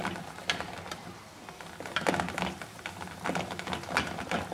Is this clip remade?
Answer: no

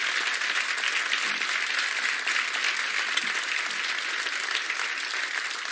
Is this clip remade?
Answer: no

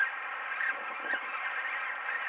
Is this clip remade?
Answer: no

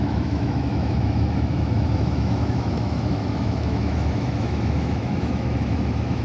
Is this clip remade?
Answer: yes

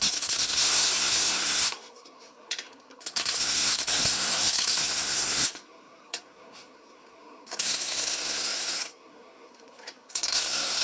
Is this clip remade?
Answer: yes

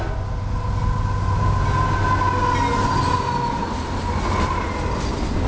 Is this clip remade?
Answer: no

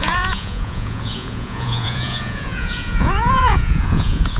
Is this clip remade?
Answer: yes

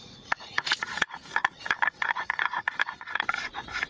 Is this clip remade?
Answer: yes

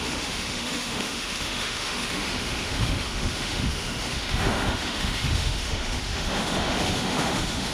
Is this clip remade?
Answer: yes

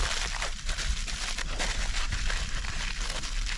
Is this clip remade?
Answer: no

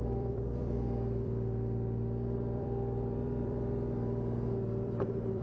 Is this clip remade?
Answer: yes